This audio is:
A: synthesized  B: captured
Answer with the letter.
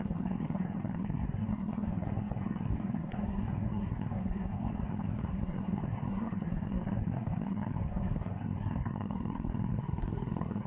A